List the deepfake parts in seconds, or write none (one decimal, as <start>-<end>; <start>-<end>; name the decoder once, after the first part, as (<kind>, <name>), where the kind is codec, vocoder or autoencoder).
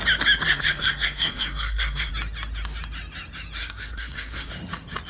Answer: 0.4-2.1 (codec, SNAC); 3.6-4.5